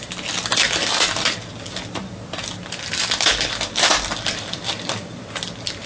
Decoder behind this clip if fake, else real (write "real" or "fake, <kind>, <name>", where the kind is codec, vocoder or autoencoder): real